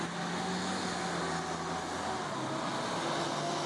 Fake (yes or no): no